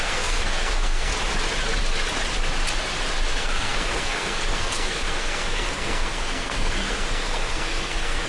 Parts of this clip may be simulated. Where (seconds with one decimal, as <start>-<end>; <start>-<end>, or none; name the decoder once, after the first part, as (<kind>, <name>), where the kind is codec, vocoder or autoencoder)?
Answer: 0.0-1.1 (codec, SNAC); 3.3-8.3